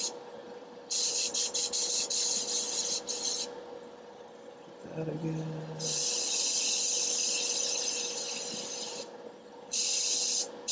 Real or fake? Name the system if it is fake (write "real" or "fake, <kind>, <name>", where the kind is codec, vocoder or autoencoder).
real